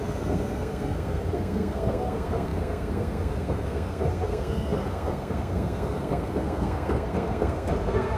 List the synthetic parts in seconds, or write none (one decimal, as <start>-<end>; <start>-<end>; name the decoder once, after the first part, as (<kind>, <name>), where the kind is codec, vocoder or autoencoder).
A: 0.0-8.2 (codec, SNAC)